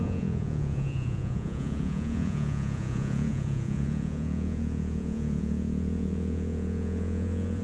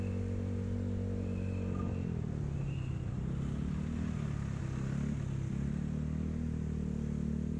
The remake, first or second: first